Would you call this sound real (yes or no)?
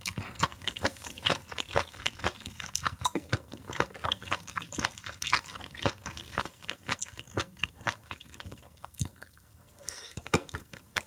no